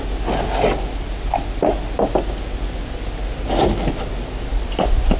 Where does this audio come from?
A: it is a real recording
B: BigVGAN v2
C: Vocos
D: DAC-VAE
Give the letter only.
A